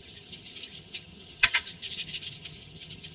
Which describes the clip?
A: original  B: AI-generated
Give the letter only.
B